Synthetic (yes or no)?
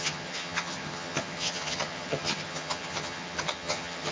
yes